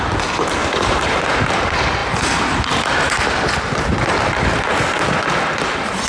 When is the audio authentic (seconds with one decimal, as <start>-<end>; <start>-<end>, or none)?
0.0-0.6; 1.2-6.1